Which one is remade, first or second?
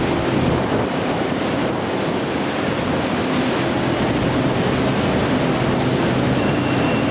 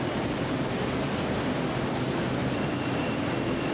second